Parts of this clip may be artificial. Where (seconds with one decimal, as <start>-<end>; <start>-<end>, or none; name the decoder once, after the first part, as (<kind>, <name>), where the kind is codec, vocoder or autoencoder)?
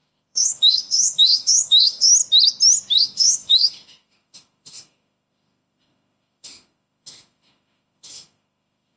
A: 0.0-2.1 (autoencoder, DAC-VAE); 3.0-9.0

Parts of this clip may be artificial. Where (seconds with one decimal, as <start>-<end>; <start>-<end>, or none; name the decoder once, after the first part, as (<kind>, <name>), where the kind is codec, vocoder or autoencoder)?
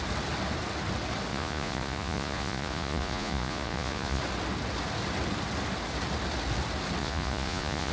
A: 1.3-4.2 (vocoder, Vocos); 7.0-7.9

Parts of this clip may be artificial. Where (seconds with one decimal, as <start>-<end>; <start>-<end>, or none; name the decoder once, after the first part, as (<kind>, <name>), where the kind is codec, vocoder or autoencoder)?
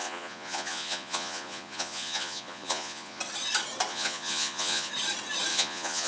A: 0.0-3.2 (vocoder, Vocos); 3.9-4.9; 5.5-6.1